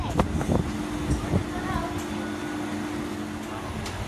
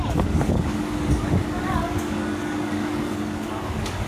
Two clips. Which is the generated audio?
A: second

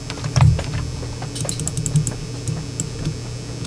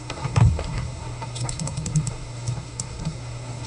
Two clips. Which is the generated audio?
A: second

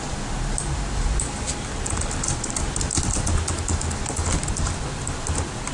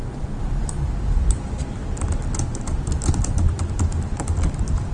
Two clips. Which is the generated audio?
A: second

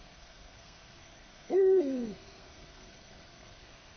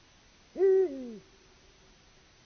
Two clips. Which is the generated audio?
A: first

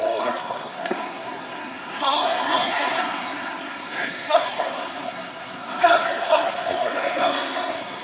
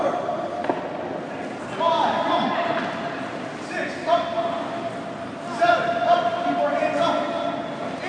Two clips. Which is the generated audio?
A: first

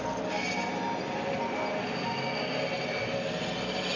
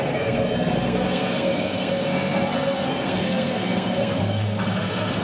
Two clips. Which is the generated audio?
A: second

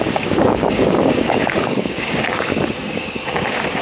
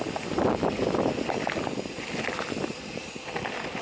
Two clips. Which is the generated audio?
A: first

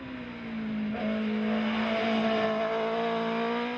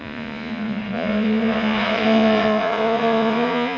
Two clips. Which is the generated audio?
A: second